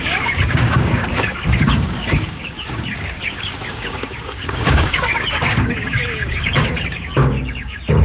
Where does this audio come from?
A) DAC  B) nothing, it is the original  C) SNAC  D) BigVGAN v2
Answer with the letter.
A